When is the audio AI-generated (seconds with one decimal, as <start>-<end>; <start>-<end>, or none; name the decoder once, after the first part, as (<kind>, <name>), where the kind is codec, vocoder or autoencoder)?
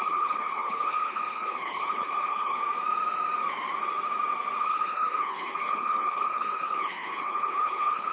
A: 0.0-2.6 (codec, HILCodec); 4.6-8.1